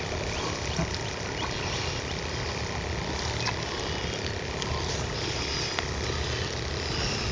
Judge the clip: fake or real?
real